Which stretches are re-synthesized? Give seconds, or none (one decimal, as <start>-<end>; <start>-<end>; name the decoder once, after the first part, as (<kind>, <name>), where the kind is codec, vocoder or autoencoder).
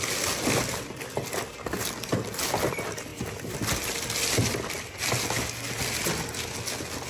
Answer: none